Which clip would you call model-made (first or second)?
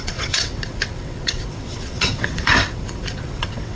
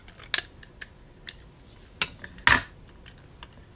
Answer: first